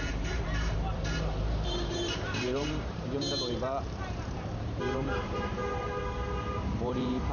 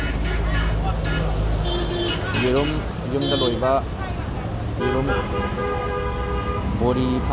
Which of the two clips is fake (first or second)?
first